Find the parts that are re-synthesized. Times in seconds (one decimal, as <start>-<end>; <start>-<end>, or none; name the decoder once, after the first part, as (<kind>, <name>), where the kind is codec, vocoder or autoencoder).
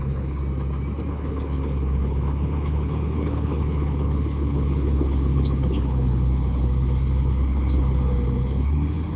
0.0-0.4 (codec, HILCodec); 1.1-9.2